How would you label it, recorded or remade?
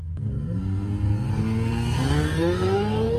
remade